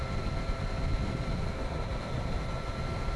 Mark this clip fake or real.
real